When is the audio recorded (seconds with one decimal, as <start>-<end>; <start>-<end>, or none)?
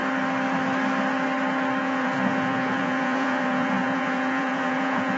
0.0-1.8